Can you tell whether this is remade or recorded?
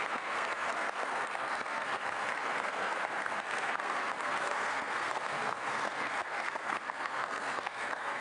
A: remade